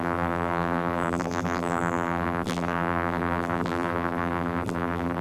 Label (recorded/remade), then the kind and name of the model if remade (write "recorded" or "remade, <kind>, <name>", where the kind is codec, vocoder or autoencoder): remade, vocoder, BigVGAN v2